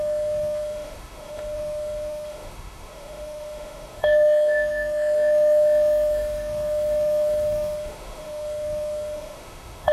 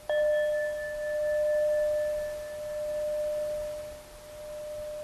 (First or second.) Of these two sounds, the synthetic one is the first